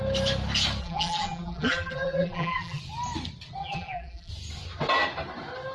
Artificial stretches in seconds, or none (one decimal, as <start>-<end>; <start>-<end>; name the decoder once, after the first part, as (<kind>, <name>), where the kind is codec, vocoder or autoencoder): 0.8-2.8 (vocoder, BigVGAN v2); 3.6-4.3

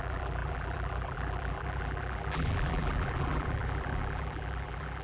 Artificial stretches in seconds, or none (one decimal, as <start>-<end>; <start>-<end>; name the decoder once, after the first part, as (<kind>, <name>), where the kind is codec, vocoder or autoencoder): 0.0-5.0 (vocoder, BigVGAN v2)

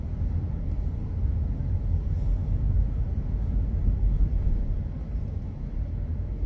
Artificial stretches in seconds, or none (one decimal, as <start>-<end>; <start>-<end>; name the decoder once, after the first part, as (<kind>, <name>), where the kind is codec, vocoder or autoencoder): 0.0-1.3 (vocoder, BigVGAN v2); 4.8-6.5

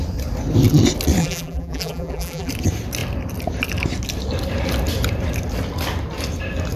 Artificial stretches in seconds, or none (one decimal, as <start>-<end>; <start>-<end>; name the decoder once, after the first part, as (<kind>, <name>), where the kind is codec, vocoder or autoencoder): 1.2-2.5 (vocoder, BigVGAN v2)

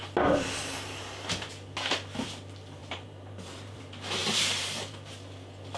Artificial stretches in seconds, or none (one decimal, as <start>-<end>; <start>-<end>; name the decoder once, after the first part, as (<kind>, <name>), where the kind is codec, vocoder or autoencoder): 2.8-3.8 (vocoder, BigVGAN v2); 4.2-5.1